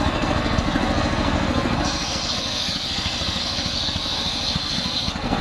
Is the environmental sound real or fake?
fake